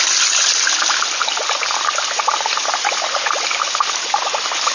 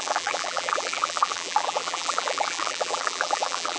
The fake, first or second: second